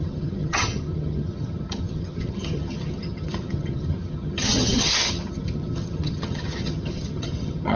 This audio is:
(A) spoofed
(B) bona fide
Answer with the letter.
A